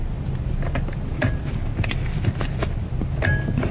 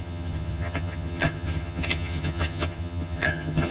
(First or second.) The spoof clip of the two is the second